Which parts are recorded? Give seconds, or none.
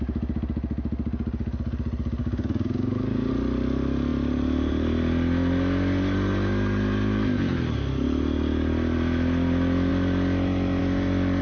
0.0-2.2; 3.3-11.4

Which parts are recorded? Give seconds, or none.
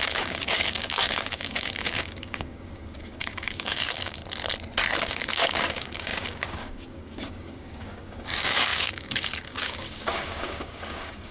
4.2-5.0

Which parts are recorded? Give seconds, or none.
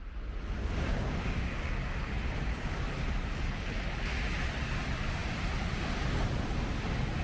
0.0-0.6; 2.8-7.2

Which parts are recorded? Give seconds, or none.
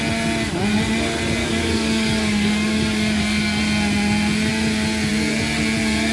0.0-1.4; 3.6-6.1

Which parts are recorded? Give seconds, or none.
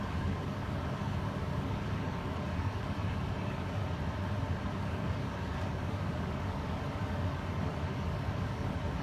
3.8-4.7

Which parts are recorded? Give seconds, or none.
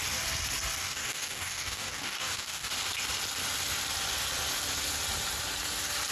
0.0-0.8; 2.7-6.1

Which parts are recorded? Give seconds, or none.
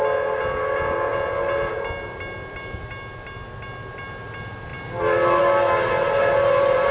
0.0-6.9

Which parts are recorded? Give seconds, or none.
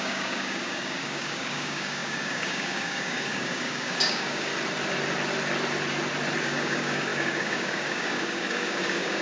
4.5-6.4